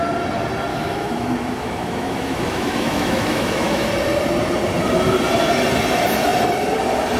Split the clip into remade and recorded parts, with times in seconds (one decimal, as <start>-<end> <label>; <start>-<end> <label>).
0.0-0.7 recorded; 0.7-3.9 remade; 3.9-7.2 recorded